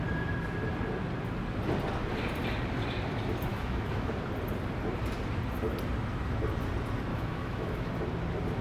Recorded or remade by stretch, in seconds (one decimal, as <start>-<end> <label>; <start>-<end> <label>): 0.0-3.5 recorded; 3.5-4.1 remade; 4.1-7.1 recorded; 7.1-7.9 remade; 7.9-8.6 recorded